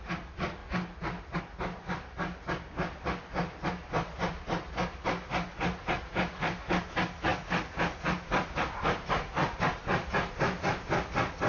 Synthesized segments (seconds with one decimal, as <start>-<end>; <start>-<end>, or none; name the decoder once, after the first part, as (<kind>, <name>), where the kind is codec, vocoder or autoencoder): none